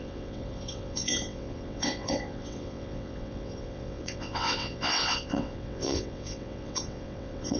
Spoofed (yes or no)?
yes